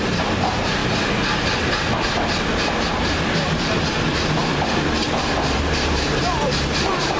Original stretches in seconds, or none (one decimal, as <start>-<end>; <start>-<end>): 0.8-2.9